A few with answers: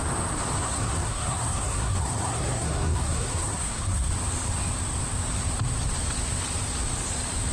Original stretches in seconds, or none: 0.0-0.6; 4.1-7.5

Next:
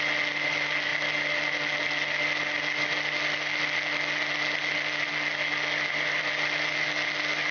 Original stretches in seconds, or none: 0.0-7.5

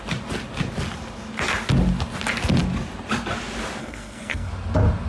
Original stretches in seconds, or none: 0.0-3.8; 4.5-5.1